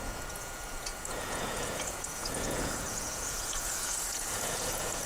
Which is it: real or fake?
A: fake